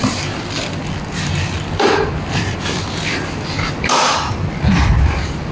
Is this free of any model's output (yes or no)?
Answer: yes